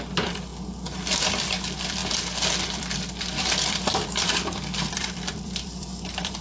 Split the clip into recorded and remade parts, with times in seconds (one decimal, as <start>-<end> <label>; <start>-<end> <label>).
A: 0.0-0.5 remade; 0.5-1.3 recorded; 1.3-2.0 remade; 2.0-2.7 recorded; 2.7-6.4 remade